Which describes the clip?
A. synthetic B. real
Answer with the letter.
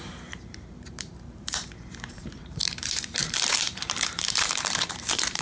A